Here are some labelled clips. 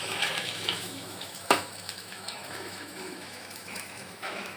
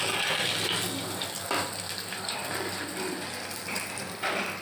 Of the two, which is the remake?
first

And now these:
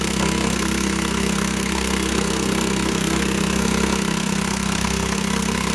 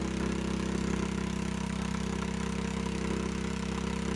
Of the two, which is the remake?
first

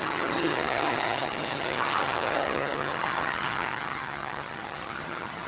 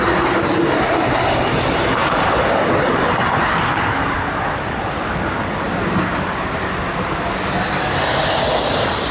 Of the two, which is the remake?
first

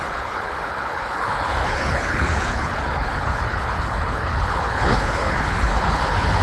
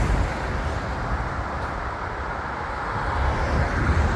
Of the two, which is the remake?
first